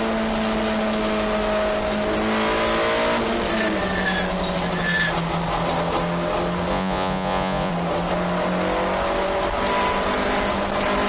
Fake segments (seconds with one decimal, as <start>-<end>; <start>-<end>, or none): 6.7-7.7